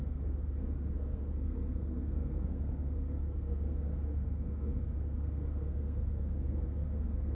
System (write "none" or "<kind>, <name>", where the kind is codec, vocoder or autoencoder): codec, SNAC